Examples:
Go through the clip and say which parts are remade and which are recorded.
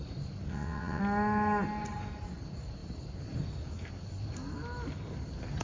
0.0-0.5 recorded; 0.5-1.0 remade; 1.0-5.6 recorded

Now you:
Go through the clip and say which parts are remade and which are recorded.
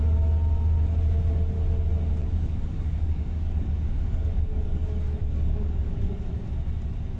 0.0-2.2 recorded; 2.2-6.5 remade; 6.5-7.2 recorded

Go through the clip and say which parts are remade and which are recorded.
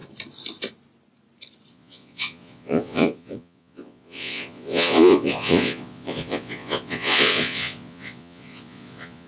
0.0-1.7 recorded; 1.7-9.3 remade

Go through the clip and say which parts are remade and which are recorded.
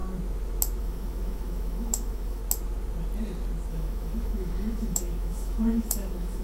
0.0-0.8 recorded; 0.8-2.4 remade; 2.4-3.7 recorded; 3.7-6.4 remade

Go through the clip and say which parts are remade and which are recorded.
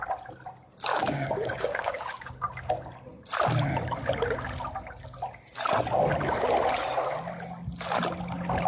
0.0-0.9 recorded; 0.9-2.3 remade; 2.3-8.7 recorded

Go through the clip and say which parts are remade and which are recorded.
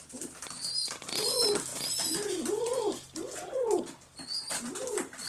0.0-5.3 recorded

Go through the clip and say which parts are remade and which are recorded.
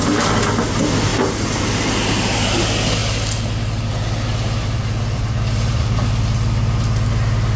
0.0-3.0 recorded; 3.0-7.1 remade; 7.1-7.6 recorded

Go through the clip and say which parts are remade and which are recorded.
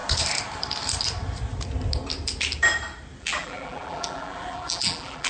0.0-3.2 recorded; 3.2-5.3 remade